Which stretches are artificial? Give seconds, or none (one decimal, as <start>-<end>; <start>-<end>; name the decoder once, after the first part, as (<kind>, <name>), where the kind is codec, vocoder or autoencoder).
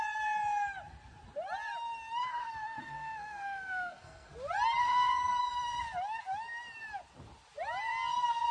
2.4-4.3 (codec, SNAC); 4.8-5.4